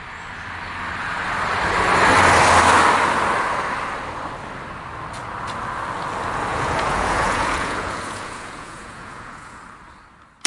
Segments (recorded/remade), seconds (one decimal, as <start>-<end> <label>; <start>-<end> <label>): 0.0-6.5 recorded; 6.5-9.6 remade; 9.6-10.5 recorded